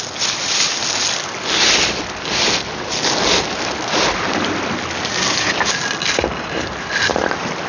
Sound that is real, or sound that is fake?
real